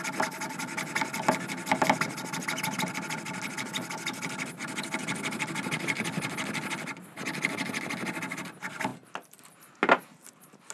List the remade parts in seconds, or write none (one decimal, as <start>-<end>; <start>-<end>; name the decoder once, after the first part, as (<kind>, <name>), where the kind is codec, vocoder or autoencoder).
none

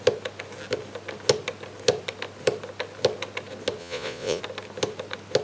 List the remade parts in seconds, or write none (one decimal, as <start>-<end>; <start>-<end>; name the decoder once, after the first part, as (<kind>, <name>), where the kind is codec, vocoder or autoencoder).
3.8-4.4 (vocoder, Vocos)

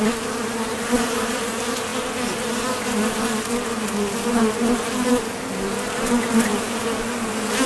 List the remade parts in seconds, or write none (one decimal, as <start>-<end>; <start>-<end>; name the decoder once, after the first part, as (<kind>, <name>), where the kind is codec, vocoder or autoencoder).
none

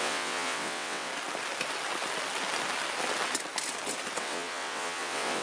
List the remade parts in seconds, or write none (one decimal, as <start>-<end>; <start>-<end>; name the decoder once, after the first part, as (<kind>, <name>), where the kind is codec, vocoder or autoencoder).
0.0-1.1 (vocoder, WaveNeXt); 4.2-5.4

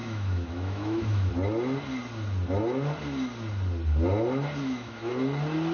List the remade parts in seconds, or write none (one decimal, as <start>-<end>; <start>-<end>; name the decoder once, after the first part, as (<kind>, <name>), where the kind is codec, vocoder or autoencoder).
0.0-1.3 (autoencoder, DAC-VAE); 4.6-5.1

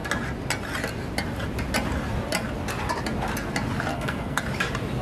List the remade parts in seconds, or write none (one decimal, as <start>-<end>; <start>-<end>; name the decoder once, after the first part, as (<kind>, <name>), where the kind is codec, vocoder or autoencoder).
3.9-4.4 (codec, SNAC)

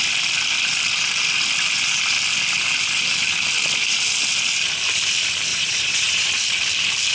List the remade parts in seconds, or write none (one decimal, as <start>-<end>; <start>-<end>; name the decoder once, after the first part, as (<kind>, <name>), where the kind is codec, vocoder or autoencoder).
5.5-6.3 (vocoder, Vocos)